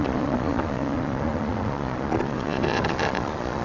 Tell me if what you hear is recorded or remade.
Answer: remade